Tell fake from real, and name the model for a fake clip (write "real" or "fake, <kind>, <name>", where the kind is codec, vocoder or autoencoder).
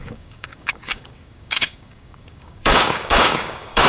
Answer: fake, codec, DAC